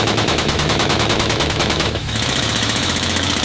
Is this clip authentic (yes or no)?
no